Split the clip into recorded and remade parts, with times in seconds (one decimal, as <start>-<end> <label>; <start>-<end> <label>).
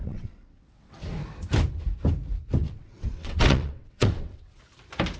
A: 0.0-1.0 remade; 1.0-2.6 recorded; 2.6-4.6 remade; 4.6-5.2 recorded